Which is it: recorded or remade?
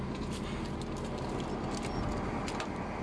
recorded